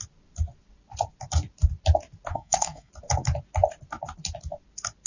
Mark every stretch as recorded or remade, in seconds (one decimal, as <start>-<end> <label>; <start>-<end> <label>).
0.0-2.3 recorded; 2.3-2.9 remade; 2.9-5.1 recorded

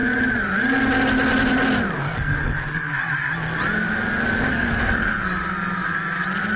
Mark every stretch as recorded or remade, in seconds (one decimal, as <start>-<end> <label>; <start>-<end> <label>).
0.0-2.0 recorded; 2.0-2.9 remade; 2.9-4.5 recorded; 4.5-5.3 remade; 5.3-6.6 recorded

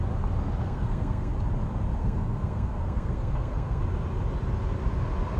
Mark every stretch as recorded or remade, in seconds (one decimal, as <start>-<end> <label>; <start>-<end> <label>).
0.0-0.6 recorded; 0.6-1.3 remade; 1.3-2.0 recorded; 2.0-3.8 remade; 3.8-5.4 recorded

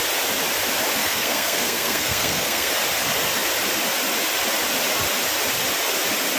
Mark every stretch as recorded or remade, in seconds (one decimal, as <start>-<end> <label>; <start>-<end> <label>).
0.0-1.0 recorded; 1.0-2.7 remade; 2.7-6.4 recorded